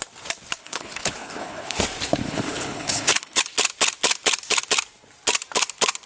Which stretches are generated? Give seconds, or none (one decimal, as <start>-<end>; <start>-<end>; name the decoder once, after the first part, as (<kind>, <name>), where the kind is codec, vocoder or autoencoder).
0.6-1.8 (codec, HILCodec); 2.2-3.4